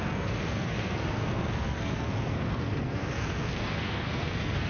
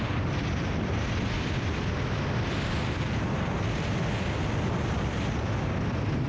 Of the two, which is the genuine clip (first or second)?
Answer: second